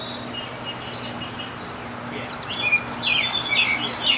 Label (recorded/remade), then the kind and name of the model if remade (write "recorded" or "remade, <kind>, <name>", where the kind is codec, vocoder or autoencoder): recorded